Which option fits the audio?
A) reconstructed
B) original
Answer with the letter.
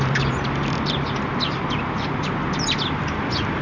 A